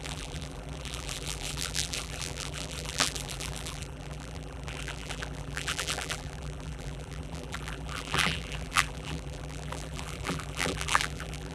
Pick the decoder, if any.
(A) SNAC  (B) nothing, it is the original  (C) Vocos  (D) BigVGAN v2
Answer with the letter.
D